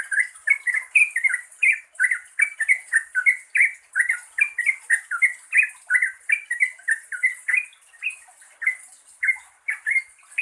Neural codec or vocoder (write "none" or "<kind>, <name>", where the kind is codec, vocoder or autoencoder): none